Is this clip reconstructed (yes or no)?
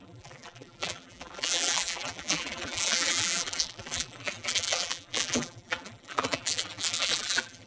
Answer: yes